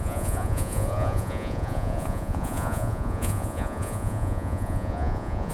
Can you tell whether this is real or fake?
fake